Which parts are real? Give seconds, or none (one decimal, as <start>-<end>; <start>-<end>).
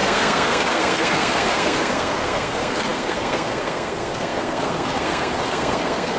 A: none